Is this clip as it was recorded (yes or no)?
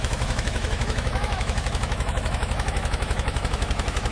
no